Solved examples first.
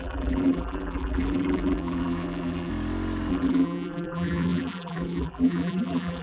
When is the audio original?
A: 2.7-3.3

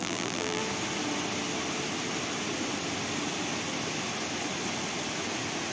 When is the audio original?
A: 0.6-5.7

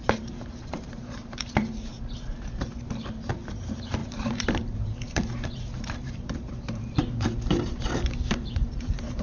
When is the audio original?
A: 1.9-3.3

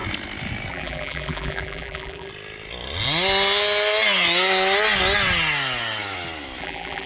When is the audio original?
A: 0.0-0.7; 2.3-6.6

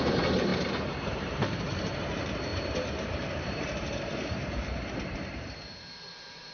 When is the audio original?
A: none

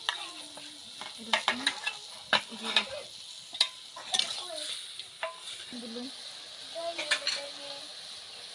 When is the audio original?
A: 0.0-8.5